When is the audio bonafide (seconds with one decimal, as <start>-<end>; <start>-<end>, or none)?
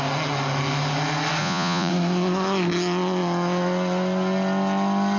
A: 0.0-1.4; 1.9-5.2